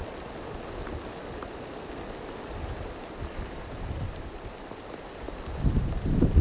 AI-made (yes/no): no